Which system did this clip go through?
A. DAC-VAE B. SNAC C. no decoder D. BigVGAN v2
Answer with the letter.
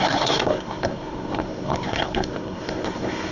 B